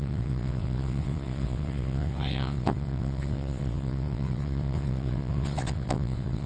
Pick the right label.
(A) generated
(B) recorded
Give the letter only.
A